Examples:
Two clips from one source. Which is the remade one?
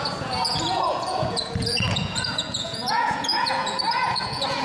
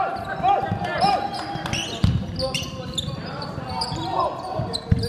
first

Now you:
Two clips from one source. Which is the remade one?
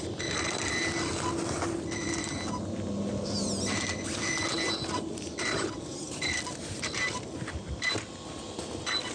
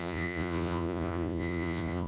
second